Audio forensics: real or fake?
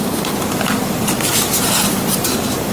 fake